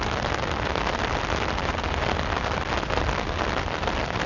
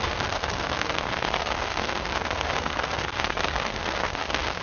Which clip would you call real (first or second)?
first